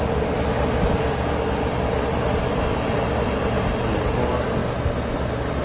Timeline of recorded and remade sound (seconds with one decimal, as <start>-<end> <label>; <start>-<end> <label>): 0.0-5.6 recorded